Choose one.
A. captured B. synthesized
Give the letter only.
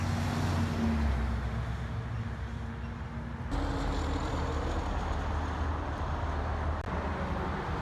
A